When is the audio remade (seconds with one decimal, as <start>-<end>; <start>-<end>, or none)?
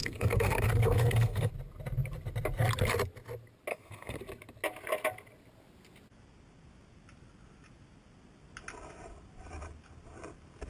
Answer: 0.0-1.5; 3.7-4.2